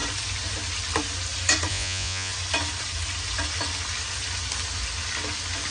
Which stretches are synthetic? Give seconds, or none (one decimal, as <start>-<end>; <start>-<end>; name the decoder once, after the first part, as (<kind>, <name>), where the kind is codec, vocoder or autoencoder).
1.7-2.3 (vocoder, Vocos)